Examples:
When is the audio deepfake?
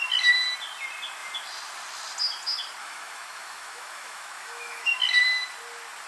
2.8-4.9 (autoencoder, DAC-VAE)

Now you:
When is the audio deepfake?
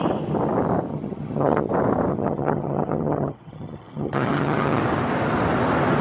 0.9-1.7 (vocoder, HiFi-GAN); 2.1-4.8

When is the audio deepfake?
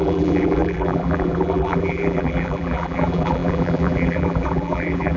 0.0-5.2 (vocoder, BigVGAN v2)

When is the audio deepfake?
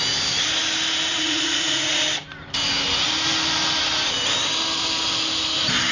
1.1-2.0 (vocoder, Vocos)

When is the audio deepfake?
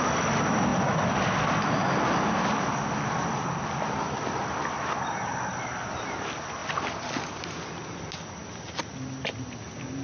none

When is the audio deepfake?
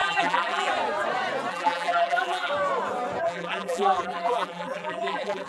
0.0-0.7 (vocoder, BigVGAN v2); 1.5-2.5; 3.2-5.5